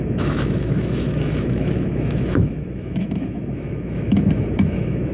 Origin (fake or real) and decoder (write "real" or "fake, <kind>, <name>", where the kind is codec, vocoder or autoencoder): fake, autoencoder, DAC-VAE